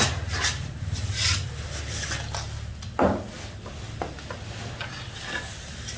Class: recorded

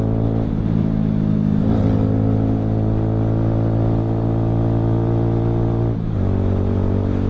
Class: recorded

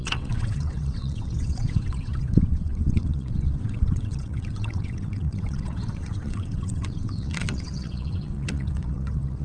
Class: remade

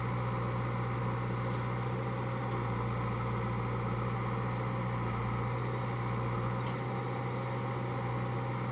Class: recorded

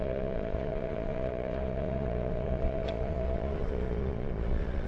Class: remade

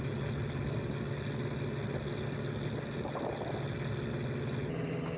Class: recorded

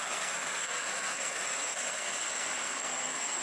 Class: remade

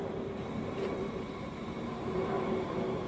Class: remade